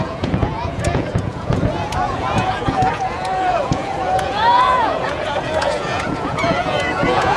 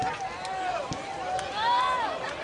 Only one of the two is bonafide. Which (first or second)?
second